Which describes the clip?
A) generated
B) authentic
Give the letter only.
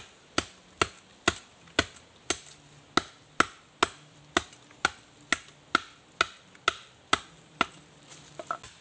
B